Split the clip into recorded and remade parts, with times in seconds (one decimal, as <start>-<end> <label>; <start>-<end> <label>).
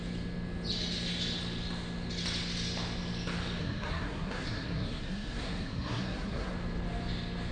0.0-3.6 recorded; 3.6-6.5 remade; 6.5-7.5 recorded